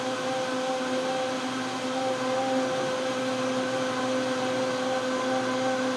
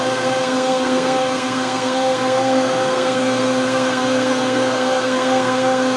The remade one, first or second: second